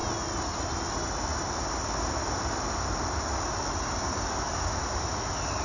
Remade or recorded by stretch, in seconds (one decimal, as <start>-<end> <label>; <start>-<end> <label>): 0.0-5.6 recorded